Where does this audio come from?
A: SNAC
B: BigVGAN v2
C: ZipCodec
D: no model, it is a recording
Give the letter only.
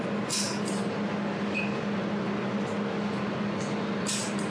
D